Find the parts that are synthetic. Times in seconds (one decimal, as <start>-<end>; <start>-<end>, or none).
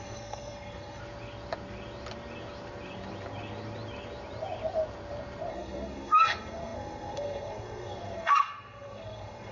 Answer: 0.0-1.0; 5.5-9.5